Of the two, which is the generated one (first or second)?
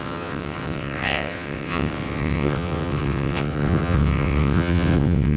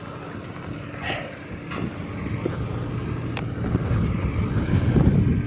first